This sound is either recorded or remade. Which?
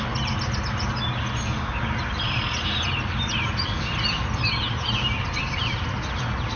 recorded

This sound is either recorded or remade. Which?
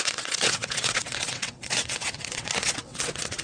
remade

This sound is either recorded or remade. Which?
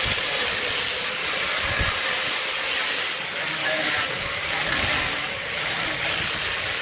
recorded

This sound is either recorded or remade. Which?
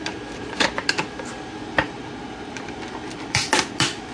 recorded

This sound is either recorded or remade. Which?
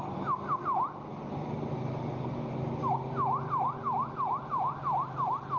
recorded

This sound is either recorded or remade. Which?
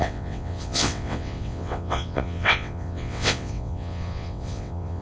remade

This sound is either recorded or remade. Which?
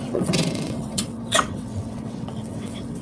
remade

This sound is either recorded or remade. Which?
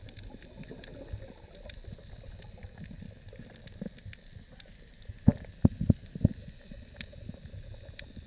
recorded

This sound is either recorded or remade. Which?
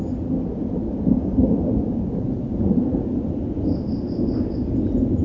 recorded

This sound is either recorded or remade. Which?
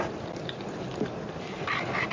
recorded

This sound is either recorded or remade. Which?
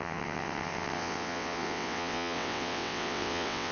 remade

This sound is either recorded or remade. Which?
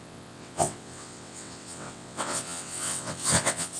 remade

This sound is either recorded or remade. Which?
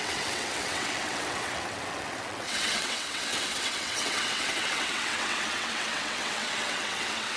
remade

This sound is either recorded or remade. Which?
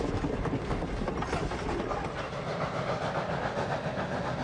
recorded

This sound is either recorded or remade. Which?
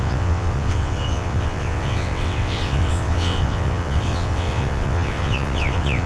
remade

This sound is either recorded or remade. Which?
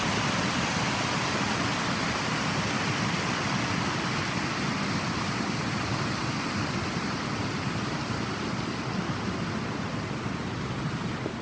recorded